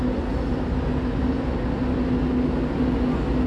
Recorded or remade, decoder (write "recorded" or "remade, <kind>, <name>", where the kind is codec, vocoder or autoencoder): recorded